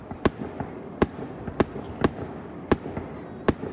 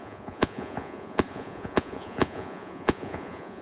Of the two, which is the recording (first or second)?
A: first